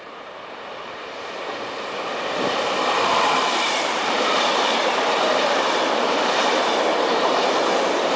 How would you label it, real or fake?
fake